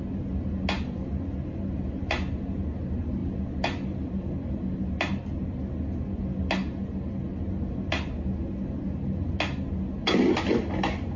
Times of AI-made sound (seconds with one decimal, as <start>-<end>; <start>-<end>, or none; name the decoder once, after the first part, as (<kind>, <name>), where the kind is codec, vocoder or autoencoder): none